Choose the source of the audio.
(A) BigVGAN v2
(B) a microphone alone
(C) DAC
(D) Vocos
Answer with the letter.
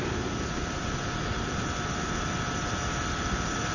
B